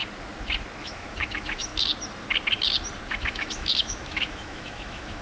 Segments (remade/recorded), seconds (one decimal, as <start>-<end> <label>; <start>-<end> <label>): 0.0-0.8 recorded; 0.8-1.7 remade; 1.7-3.1 recorded; 3.1-5.2 remade